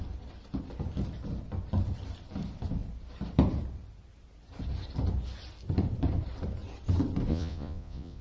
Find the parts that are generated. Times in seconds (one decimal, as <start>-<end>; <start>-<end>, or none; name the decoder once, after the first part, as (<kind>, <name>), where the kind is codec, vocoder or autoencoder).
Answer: 7.3-8.2 (vocoder, Vocos)